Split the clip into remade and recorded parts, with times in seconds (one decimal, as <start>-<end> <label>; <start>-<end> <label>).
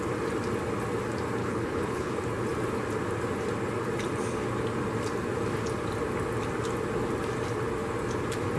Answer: 0.0-1.4 recorded; 1.4-2.1 remade; 2.1-8.6 recorded